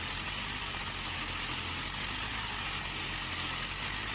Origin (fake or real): real